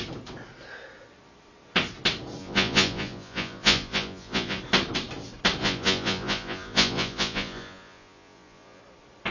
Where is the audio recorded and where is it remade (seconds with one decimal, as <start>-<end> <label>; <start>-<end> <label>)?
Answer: 0.0-2.4 recorded; 2.4-4.6 remade; 4.6-5.6 recorded; 5.6-8.8 remade; 8.8-9.3 recorded